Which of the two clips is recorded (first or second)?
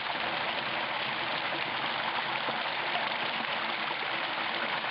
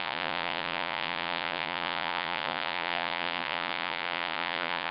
first